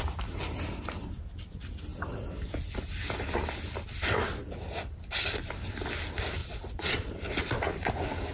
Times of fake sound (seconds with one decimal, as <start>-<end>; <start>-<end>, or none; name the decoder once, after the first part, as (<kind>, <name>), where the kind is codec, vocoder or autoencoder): 6.4-7.2 (vocoder, Vocos)